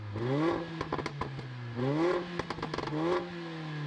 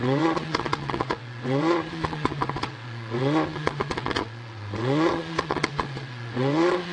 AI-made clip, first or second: second